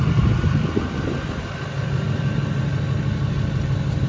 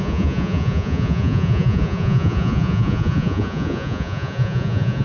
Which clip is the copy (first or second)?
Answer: second